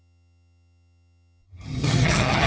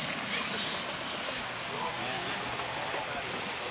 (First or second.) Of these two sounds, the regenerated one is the first